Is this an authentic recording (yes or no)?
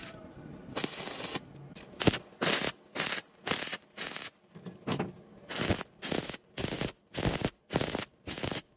yes